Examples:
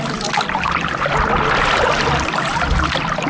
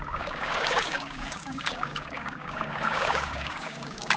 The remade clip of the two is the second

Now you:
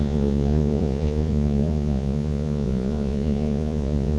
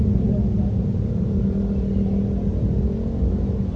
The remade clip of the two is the first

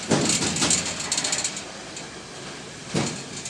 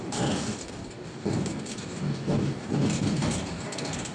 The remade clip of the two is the second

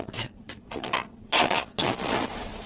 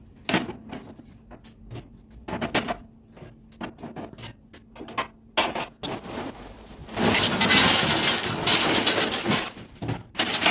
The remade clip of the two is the first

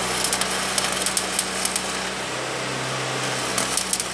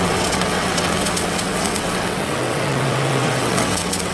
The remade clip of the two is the second